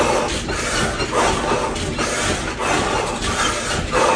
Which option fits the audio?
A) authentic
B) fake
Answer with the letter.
A